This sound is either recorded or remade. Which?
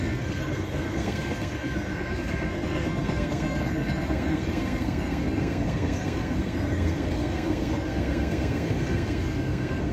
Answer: remade